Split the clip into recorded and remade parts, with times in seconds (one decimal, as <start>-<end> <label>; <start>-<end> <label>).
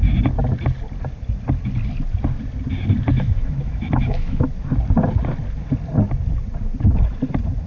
0.0-3.1 recorded; 3.1-4.4 remade; 4.4-7.7 recorded